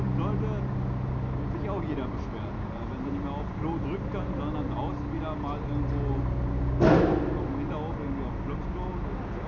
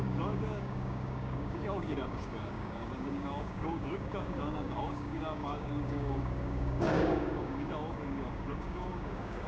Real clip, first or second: first